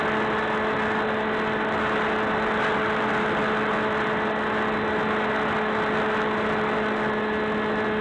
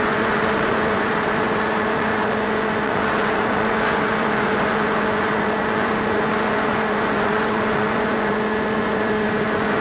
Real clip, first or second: first